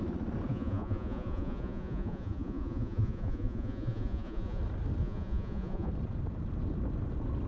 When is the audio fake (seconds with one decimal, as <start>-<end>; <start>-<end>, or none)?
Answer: 0.5-4.6; 5.0-5.9